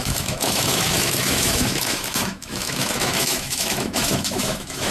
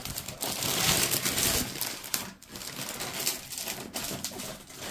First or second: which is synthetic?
first